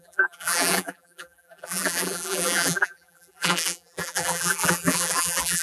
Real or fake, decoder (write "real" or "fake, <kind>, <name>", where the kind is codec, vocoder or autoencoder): fake, vocoder, BigVGAN v2